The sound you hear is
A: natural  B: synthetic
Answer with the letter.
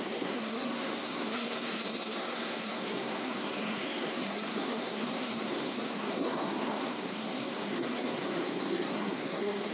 B